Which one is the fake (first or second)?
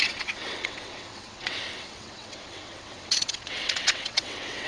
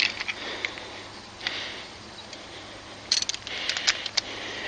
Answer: first